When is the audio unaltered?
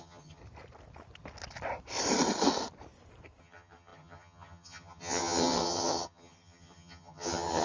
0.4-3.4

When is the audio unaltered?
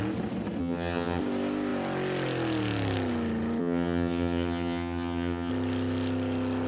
0.0-0.6; 1.2-3.6; 5.5-6.7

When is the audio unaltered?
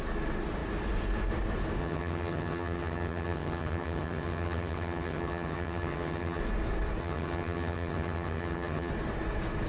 0.0-1.8; 6.4-7.0; 8.9-9.7